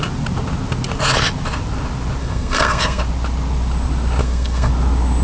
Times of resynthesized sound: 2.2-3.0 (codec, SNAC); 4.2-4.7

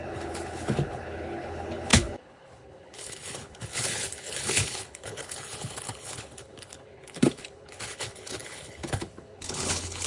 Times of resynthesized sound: 0.0-10.1 (codec, HILCodec)

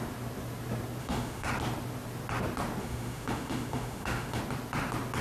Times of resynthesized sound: 1.0-1.5 (autoencoder, DAC-VAE); 2.8-4.4

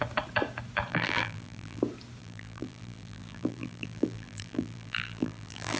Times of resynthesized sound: 0.9-1.8 (vocoder, BigVGAN v2); 2.2-5.8

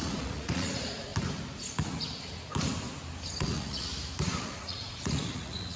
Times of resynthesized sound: 0.0-1.1 (vocoder, Vocos); 3.4-3.9; 4.4-5.8

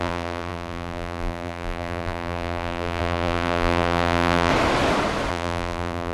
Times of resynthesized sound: 0.0-4.5 (vocoder, BigVGAN v2); 5.3-6.1

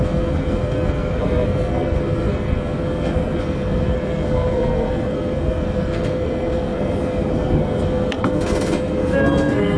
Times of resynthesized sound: 0.0-9.8 (codec, SNAC)